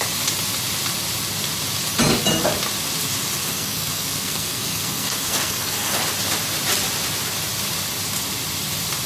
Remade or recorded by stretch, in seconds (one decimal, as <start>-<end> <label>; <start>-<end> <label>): 0.0-3.4 recorded; 3.4-6.0 remade; 6.0-9.1 recorded